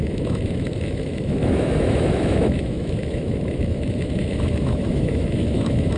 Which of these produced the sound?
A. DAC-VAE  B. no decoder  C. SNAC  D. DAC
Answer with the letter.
A